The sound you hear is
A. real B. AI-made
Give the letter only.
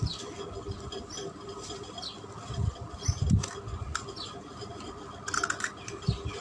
B